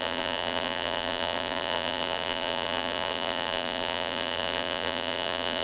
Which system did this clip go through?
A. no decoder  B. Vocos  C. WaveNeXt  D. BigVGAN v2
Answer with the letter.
D